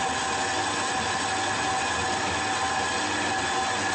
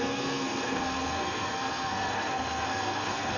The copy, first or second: second